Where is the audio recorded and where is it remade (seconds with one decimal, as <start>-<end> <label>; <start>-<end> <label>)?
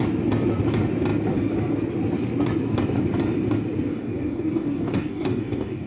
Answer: 0.0-3.9 recorded; 3.9-5.9 remade